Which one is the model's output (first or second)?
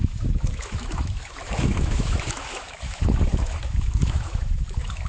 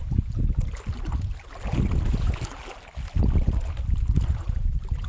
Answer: first